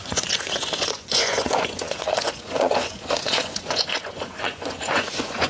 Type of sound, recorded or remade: remade